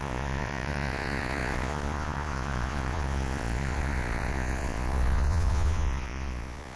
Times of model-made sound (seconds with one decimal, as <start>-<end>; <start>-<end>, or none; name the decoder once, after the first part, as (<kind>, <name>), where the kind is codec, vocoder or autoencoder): 0.0-6.8 (vocoder, Vocos)